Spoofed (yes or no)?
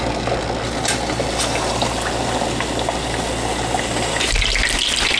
no